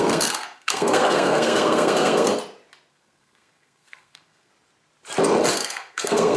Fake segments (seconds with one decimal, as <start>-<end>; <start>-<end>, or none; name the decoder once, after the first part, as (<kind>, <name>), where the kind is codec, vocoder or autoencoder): 0.0-2.3 (codec, SNAC); 2.9-4.5; 5.5-6.4